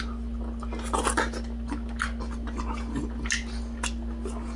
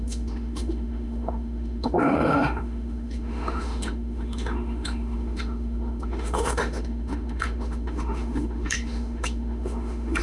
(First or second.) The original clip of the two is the first